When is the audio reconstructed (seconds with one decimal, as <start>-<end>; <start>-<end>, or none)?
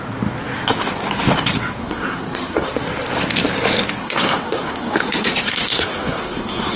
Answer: 1.8-2.7; 4.0-6.8